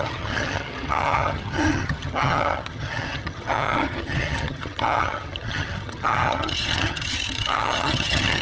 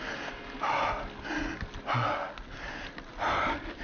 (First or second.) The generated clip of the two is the first